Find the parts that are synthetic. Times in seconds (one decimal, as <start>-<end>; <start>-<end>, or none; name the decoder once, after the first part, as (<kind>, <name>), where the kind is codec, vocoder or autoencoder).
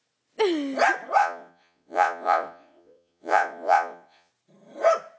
1.2-4.3 (vocoder, Vocos)